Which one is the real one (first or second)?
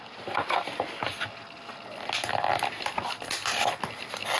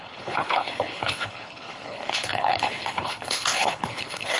first